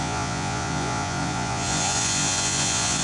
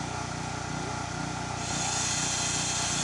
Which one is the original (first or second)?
second